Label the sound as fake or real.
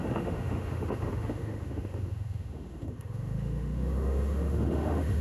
fake